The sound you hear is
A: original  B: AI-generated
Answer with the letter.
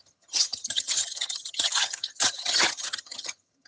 B